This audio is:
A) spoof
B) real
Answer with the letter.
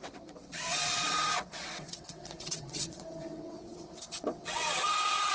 A